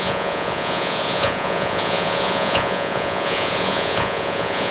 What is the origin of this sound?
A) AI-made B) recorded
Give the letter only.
A